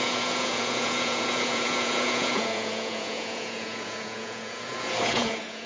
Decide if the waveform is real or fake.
fake